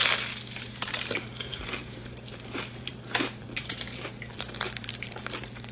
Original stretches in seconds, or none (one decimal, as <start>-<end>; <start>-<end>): 0.0-0.5